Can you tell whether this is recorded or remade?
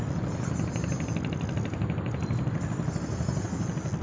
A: recorded